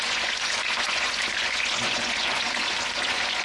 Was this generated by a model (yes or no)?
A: yes